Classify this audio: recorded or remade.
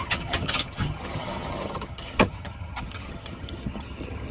remade